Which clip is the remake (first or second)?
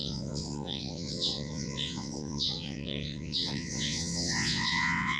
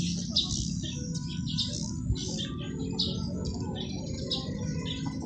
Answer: first